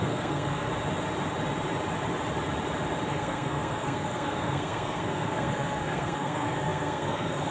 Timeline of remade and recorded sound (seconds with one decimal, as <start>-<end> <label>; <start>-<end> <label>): 0.0-0.7 remade; 0.7-3.1 recorded; 3.1-7.5 remade